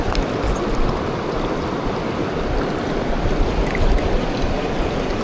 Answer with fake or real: real